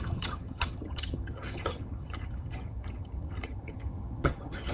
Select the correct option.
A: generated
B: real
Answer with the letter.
A